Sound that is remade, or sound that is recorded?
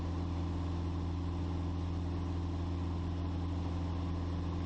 recorded